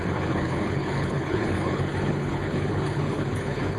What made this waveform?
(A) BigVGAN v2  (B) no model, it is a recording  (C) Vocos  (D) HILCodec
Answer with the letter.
D